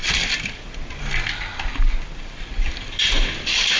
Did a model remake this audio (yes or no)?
no